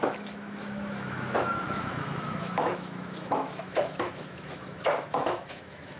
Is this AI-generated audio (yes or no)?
yes